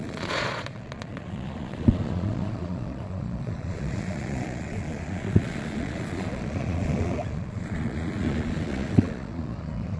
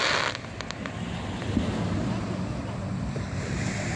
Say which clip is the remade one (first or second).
first